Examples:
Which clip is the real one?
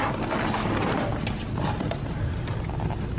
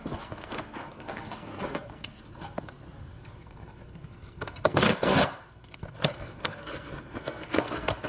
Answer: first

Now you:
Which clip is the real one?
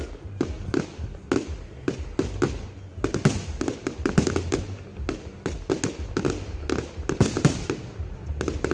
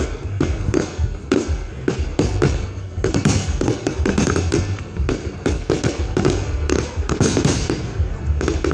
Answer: first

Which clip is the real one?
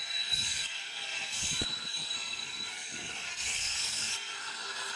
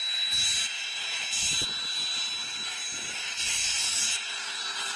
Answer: second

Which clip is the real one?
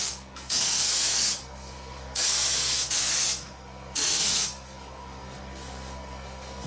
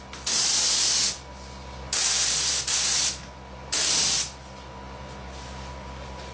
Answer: second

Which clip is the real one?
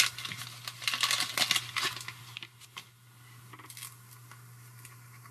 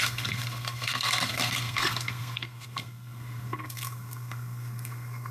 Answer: first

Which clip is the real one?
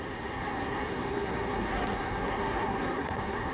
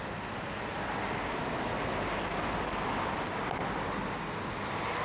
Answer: second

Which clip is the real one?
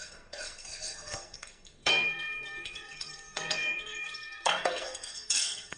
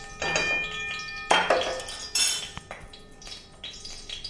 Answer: second